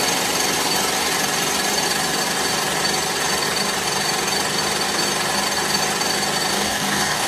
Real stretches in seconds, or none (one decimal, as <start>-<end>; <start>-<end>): 0.0-6.5